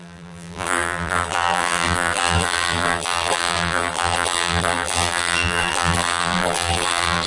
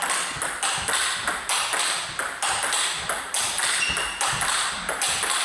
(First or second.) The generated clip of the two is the first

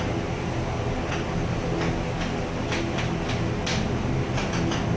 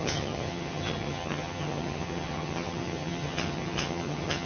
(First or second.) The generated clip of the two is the second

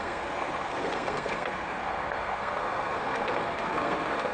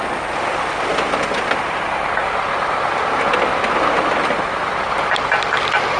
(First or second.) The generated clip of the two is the first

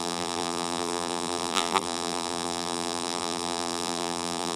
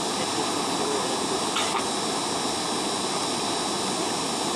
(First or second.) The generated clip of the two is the first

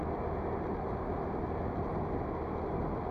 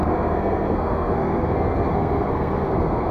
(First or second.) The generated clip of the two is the second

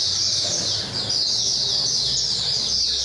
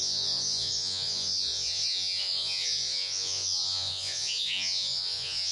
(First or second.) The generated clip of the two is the second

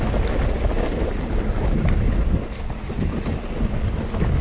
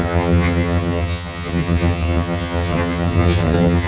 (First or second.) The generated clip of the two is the second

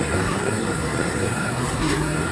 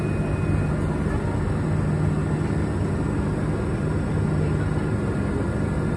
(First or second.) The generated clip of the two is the first